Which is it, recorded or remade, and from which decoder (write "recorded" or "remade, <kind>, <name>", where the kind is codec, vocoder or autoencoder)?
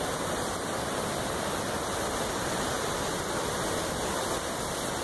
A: remade, vocoder, BigVGAN v2